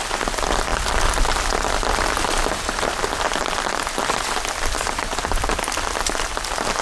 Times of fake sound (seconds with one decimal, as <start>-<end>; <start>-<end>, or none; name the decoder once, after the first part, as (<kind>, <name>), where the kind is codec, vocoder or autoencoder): none